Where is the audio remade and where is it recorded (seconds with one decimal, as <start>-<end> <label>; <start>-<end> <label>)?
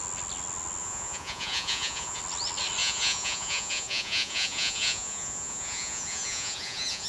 0.0-0.8 recorded; 0.8-2.2 remade; 2.2-2.8 recorded; 2.8-7.1 remade